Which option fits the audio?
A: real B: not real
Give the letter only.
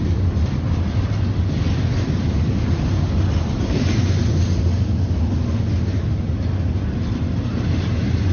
A